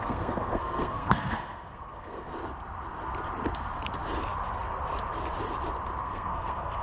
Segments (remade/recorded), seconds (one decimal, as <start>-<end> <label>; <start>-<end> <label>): 0.0-2.3 remade; 2.3-6.0 recorded; 6.0-6.8 remade